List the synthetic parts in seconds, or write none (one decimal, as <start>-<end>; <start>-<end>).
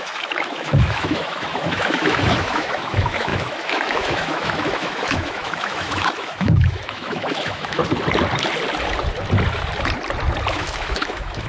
0.0-7.8; 10.5-11.5